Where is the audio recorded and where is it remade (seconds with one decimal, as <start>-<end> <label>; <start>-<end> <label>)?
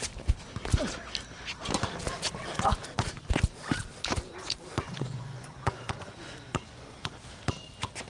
0.0-4.7 recorded; 4.7-7.1 remade; 7.1-8.1 recorded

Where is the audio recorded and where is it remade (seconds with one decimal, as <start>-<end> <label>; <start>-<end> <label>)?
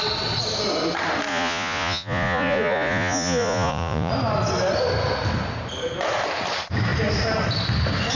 0.0-1.3 recorded; 1.3-4.1 remade; 4.1-8.1 recorded